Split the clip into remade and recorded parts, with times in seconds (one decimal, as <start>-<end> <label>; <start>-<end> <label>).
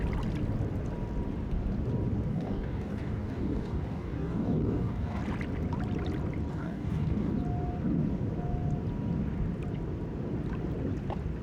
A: 0.0-2.3 recorded; 2.3-5.2 remade; 5.2-6.5 recorded; 6.5-7.3 remade; 7.3-11.4 recorded